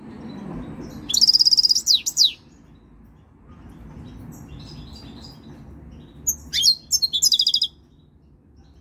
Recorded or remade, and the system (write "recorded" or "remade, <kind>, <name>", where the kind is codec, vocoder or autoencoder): recorded